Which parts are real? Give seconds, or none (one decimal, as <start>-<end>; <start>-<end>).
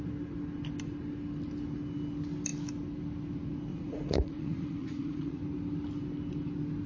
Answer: 0.0-3.7; 5.4-6.9